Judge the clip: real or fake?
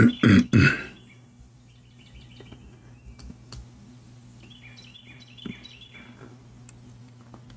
real